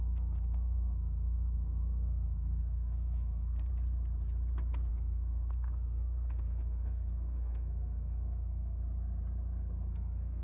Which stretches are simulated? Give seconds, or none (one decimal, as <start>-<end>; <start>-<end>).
0.0-3.7; 4.9-8.8; 9.9-10.4